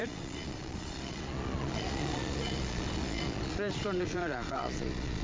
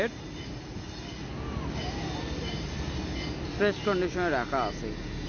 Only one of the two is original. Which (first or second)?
second